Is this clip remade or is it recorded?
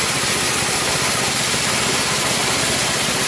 recorded